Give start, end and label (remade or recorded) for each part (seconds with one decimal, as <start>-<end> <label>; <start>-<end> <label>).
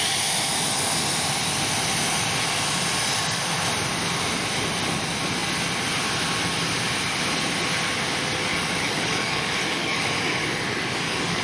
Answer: 0.0-8.5 recorded; 8.5-11.4 remade